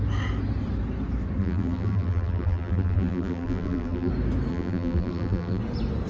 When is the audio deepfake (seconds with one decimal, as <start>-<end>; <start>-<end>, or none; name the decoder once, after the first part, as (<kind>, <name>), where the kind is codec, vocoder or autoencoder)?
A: 1.4-4.1 (vocoder, BigVGAN v2); 4.5-5.6